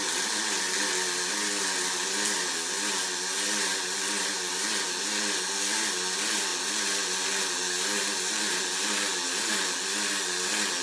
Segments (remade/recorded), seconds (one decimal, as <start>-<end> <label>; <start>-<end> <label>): 0.0-10.8 recorded